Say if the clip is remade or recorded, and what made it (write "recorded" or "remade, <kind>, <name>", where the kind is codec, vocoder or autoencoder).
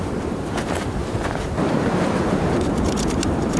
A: remade, vocoder, BigVGAN v2